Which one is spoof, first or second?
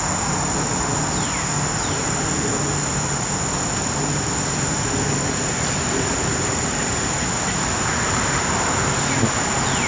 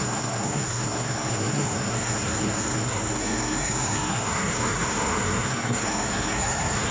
second